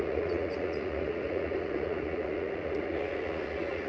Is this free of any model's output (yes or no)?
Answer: no